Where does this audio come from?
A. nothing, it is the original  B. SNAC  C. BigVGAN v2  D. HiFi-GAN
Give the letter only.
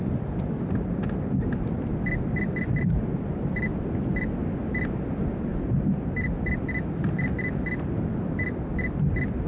A